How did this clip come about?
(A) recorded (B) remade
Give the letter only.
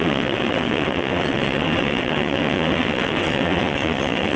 B